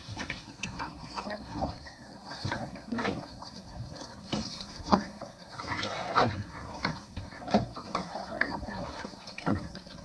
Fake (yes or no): yes